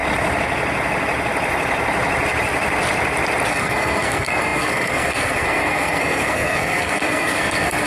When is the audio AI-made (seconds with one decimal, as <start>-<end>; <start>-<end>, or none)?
3.5-7.9